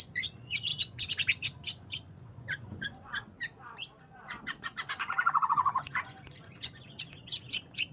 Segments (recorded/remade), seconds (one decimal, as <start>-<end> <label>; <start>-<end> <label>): 0.0-3.1 remade; 3.1-4.0 recorded; 4.0-7.9 remade